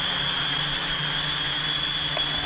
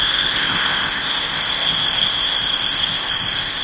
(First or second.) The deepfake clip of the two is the second